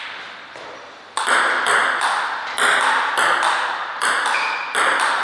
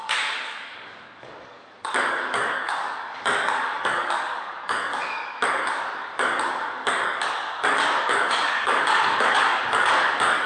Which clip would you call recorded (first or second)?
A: first